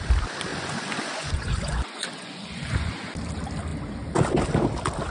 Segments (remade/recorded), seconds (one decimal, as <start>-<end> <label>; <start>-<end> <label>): 0.0-0.5 recorded; 0.5-2.9 remade; 2.9-5.1 recorded